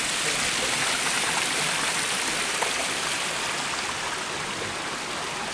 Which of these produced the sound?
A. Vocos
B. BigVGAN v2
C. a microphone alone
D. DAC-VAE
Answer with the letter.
C